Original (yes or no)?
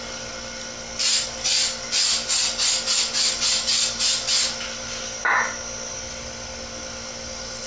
yes